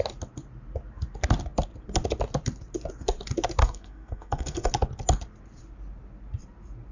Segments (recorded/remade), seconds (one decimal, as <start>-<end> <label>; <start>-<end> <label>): 0.0-3.6 recorded; 3.6-4.7 remade; 4.7-6.9 recorded